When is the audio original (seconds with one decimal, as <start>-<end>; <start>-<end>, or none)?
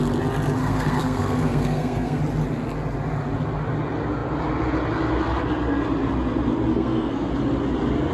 0.0-0.6; 2.2-6.7; 7.3-8.1